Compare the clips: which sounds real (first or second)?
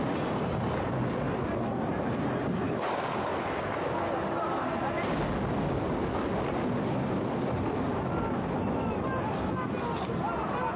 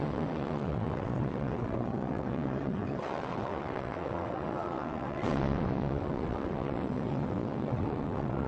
first